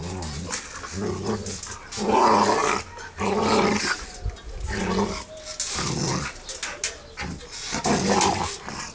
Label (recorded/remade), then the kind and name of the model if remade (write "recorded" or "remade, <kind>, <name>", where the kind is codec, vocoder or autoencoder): recorded